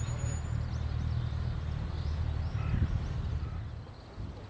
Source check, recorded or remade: recorded